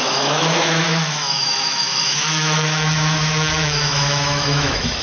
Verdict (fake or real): fake